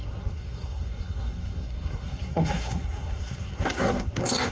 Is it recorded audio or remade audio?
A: remade